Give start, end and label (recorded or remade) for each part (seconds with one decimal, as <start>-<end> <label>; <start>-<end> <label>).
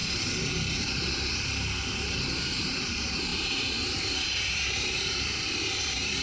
0.0-6.2 remade